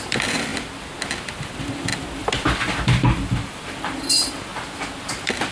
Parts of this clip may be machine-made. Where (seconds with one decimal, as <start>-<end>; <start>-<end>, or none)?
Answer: 0.0-0.5; 1.4-4.5; 5.1-5.5